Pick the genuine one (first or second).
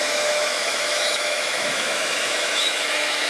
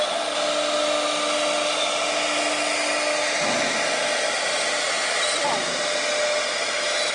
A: second